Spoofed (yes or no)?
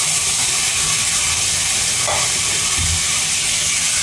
no